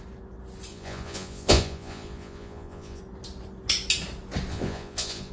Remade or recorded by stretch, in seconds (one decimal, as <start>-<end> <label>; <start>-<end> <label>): 0.0-0.7 recorded; 0.7-3.0 remade; 3.0-4.5 recorded; 4.5-5.3 remade

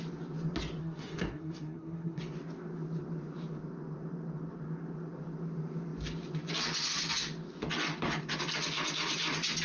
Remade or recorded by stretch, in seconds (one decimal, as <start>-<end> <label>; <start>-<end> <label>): 0.0-0.8 recorded; 0.8-2.2 remade; 2.2-9.6 recorded

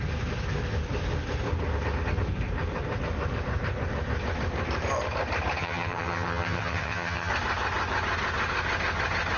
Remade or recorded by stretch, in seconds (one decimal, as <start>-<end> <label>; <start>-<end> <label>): 0.0-5.6 recorded; 5.6-7.3 remade; 7.3-9.4 recorded

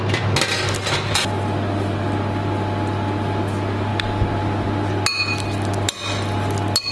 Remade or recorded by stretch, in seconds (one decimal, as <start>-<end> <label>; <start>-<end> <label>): 0.0-6.9 recorded

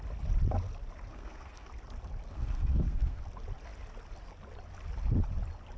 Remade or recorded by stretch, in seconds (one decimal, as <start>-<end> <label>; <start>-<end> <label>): 0.0-1.1 recorded; 1.1-1.7 remade; 1.7-2.3 recorded; 2.3-3.3 remade; 3.3-5.8 recorded

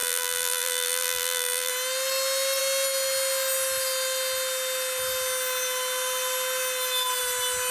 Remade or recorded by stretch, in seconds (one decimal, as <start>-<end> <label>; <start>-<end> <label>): 0.0-1.7 remade; 1.7-7.7 recorded

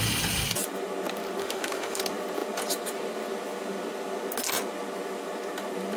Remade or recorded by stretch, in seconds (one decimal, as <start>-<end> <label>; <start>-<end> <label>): 0.0-1.4 recorded; 1.4-2.0 remade; 2.0-6.0 recorded

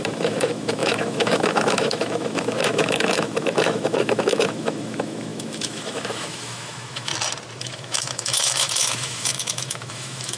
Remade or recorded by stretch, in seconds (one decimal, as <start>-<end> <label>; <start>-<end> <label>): 0.0-7.1 remade; 7.1-7.6 recorded; 7.6-10.4 remade